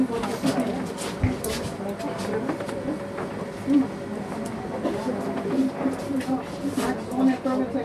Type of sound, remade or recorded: recorded